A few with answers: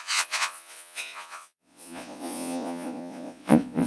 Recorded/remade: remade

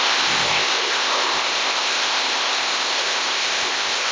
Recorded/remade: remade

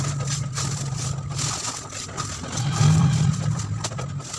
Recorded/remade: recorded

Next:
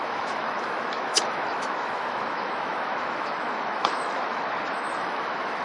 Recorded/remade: remade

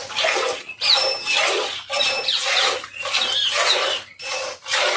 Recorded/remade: recorded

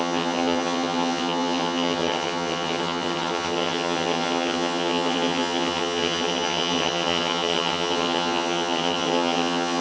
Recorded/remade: remade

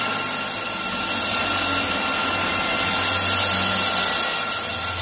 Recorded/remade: recorded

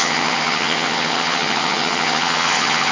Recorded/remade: remade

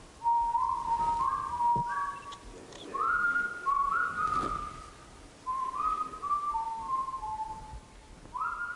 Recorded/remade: recorded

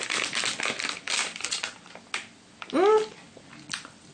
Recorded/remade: recorded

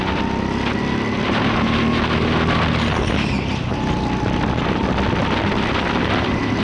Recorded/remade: recorded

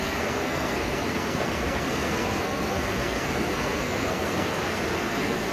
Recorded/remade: remade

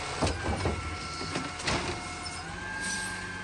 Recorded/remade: recorded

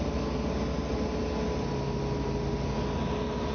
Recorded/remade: recorded